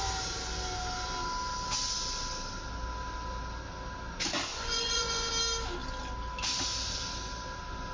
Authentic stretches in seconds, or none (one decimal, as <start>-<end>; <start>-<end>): 0.0-4.5; 5.3-7.9